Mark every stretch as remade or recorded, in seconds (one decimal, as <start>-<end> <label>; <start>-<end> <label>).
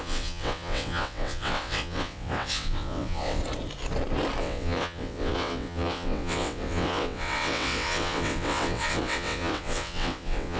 0.0-3.4 remade; 3.4-4.4 recorded; 4.4-10.6 remade